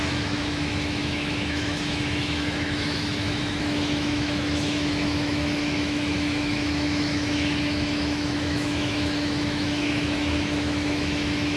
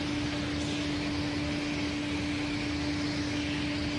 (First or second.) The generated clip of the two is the first